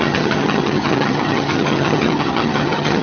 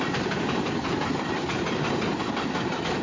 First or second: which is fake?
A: first